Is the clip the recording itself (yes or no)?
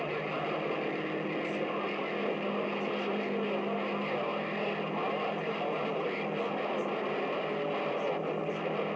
yes